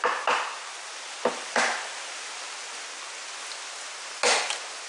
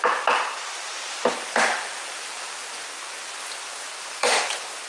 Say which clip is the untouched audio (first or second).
first